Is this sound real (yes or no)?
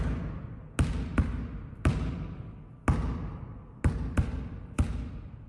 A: yes